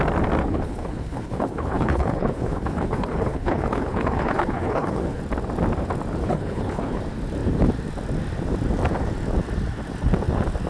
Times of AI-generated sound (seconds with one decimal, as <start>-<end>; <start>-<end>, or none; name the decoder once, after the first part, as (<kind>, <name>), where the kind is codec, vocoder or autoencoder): 0.4-5.2 (codec, HILCodec); 6.2-7.0